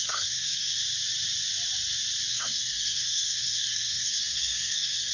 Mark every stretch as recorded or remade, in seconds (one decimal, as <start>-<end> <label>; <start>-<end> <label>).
0.0-0.8 remade; 0.8-2.3 recorded; 2.3-5.1 remade